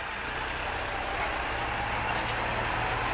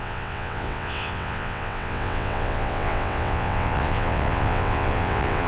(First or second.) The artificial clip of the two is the second